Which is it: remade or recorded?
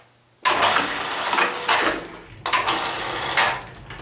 recorded